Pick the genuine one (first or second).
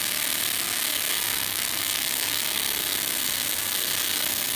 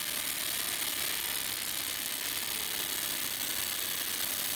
second